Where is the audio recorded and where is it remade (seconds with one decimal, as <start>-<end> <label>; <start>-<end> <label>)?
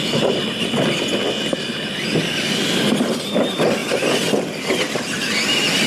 0.0-5.9 recorded